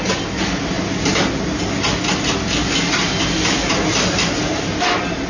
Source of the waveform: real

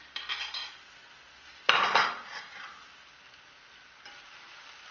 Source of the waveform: real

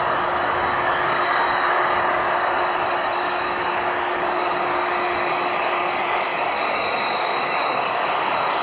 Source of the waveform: fake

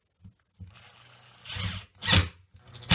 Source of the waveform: real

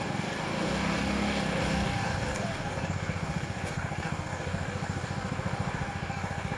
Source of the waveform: fake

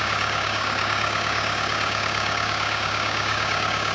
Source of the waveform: fake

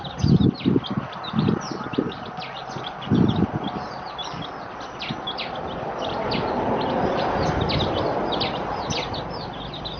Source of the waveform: real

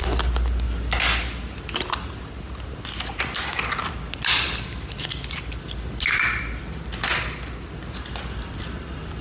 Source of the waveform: real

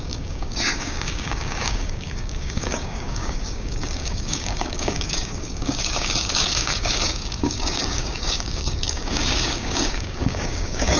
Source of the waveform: fake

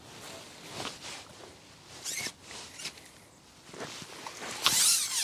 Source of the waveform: real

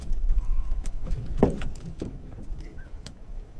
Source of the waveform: fake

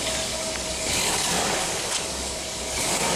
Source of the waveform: fake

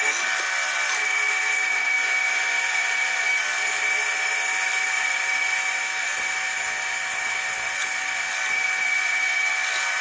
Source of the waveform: real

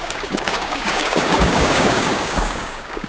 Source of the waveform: fake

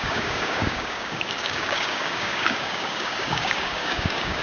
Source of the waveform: fake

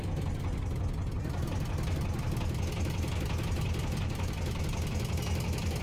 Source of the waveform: real